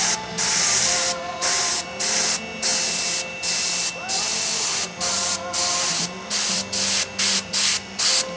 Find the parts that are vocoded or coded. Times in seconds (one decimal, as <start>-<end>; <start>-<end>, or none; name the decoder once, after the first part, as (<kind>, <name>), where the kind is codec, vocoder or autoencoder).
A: none